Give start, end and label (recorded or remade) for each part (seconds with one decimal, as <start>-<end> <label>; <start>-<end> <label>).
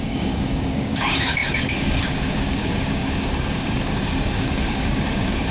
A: 0.0-5.5 remade